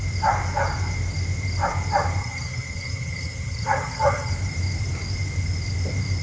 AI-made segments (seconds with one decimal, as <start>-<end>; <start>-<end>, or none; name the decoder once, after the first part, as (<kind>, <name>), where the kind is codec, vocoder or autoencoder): 2.2-4.3 (vocoder, HiFi-GAN)